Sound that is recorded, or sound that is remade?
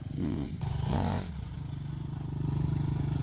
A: remade